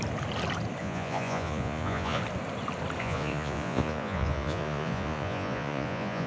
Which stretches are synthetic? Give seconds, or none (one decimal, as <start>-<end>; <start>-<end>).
0.8-2.2; 3.0-6.3